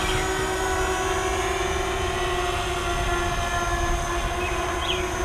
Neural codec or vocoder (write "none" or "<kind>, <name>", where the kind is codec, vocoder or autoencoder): none